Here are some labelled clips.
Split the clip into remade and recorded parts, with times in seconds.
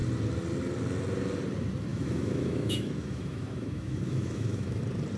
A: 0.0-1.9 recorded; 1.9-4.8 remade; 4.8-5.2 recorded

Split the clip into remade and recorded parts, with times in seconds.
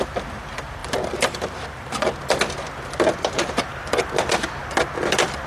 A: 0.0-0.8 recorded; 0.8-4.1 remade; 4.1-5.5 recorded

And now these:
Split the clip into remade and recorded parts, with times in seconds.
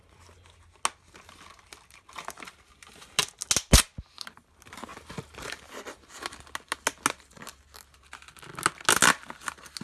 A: 0.0-9.8 recorded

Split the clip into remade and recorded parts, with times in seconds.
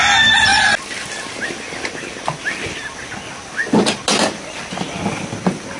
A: 0.0-5.8 recorded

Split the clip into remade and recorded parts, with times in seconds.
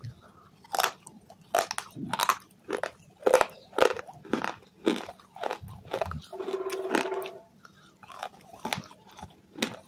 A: 0.0-9.9 recorded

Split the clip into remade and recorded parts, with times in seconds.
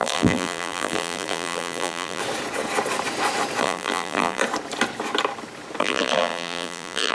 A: 0.0-2.2 remade; 2.2-3.6 recorded; 3.6-4.4 remade; 4.4-5.8 recorded; 5.8-7.1 remade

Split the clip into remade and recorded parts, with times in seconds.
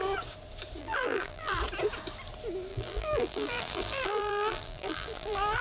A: 0.0-0.8 recorded; 0.8-1.6 remade; 1.6-2.7 recorded; 2.7-5.6 remade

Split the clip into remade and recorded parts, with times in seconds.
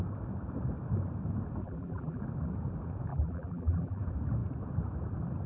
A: 0.0-1.6 recorded; 1.6-2.2 remade; 2.2-3.1 recorded; 3.1-4.0 remade; 4.0-5.5 recorded